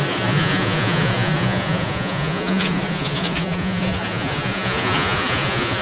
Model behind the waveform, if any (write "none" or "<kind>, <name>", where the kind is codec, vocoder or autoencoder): vocoder, Vocos